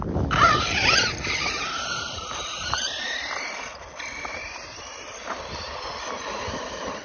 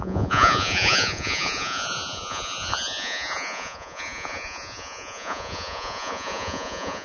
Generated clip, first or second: second